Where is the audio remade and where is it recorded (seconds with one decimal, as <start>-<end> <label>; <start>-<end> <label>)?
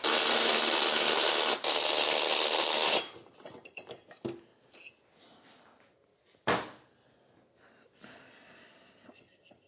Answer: 0.0-9.7 recorded